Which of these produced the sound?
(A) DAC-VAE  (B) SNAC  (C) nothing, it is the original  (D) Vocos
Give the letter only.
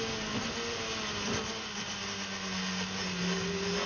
C